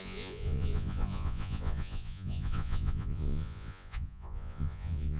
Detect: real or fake fake